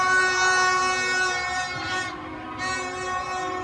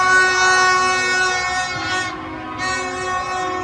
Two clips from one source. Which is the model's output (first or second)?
first